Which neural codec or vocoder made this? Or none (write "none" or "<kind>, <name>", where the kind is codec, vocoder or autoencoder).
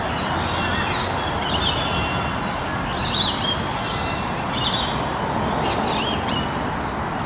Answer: none